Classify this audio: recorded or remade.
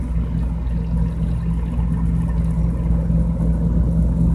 recorded